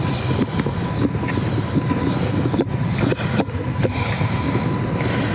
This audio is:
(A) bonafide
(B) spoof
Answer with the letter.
A